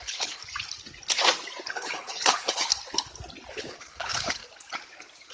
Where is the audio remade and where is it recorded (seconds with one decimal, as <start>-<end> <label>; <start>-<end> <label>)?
0.0-0.4 remade; 0.4-1.7 recorded; 1.7-2.7 remade; 2.7-3.5 recorded; 3.5-4.4 remade; 4.4-5.3 recorded